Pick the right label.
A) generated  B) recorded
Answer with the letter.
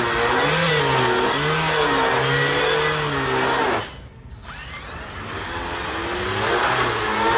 B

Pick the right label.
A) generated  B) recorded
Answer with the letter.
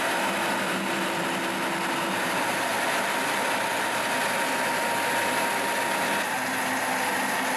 B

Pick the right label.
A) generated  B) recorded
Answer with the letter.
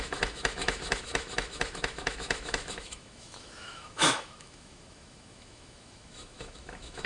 A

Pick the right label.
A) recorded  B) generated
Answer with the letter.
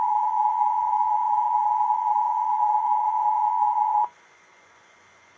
B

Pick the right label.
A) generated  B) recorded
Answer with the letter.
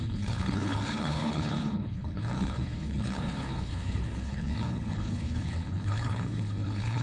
A